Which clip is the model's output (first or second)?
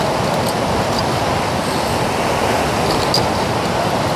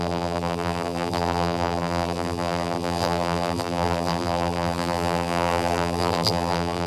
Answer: second